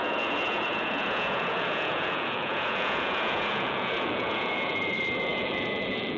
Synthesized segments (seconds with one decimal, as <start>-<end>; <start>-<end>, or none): 0.0-6.2